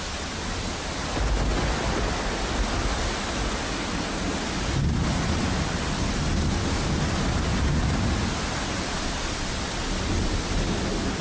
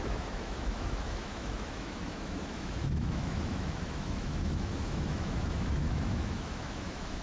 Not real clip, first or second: second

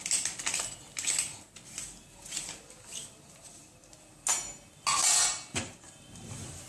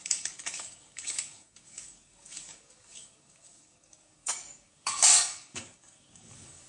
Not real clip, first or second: second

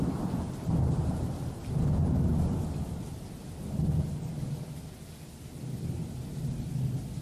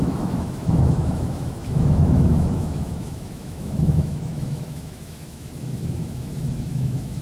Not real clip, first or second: second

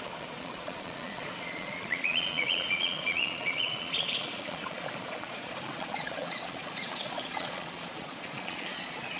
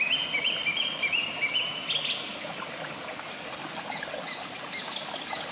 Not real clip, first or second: first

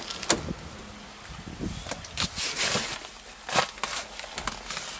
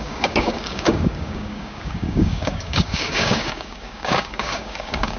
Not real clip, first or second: second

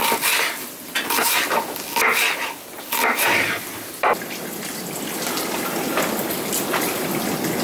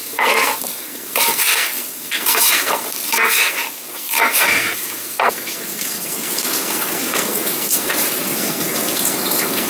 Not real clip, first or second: second